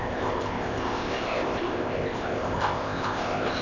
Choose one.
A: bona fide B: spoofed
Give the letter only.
B